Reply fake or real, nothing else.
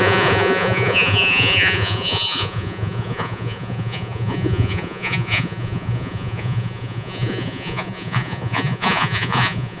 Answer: fake